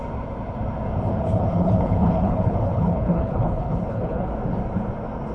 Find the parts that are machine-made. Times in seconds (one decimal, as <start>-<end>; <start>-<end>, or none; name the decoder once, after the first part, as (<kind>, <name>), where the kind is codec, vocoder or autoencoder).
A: 1.1-4.3 (codec, HILCodec)